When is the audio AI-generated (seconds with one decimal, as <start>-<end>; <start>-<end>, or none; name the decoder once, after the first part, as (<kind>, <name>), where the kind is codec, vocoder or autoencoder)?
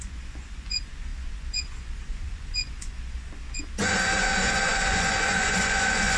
0.0-6.2 (vocoder, Vocos)